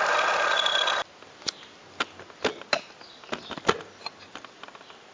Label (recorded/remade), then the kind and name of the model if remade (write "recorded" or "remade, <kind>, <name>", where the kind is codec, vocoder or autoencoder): recorded